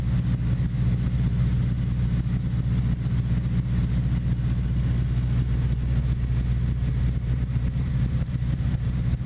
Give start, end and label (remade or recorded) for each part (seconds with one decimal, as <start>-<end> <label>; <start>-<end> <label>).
0.0-6.9 recorded; 6.9-9.3 remade